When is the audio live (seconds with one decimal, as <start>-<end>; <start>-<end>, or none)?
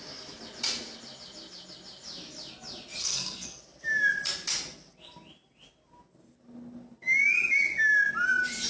0.0-3.0; 3.6-8.7